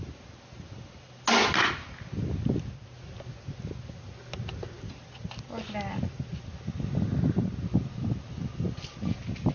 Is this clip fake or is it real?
real